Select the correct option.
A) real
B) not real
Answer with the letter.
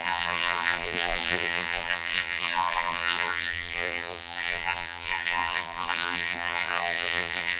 B